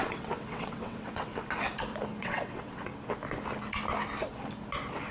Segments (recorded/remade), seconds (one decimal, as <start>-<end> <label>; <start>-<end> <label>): 0.0-1.3 remade; 1.3-2.2 recorded; 2.2-2.9 remade; 2.9-5.1 recorded